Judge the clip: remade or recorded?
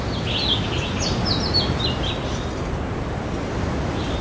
recorded